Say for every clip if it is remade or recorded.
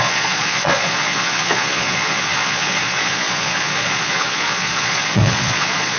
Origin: remade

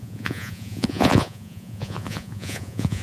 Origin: remade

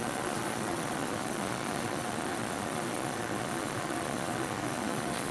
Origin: remade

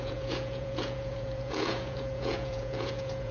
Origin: remade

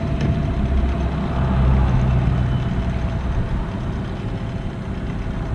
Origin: recorded